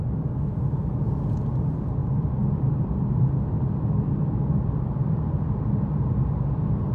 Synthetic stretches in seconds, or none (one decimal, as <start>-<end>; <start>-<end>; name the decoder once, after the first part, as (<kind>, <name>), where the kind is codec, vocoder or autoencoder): none